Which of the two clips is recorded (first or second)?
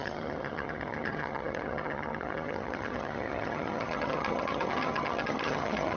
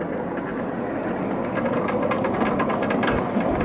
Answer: second